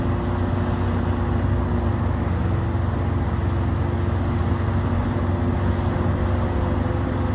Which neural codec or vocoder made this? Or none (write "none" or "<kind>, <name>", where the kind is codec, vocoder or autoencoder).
none